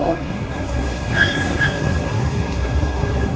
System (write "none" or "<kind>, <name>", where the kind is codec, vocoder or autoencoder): codec, SNAC